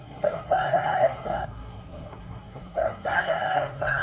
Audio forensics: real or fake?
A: fake